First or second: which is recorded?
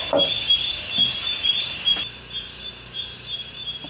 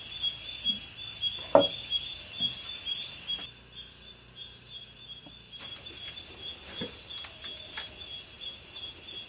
second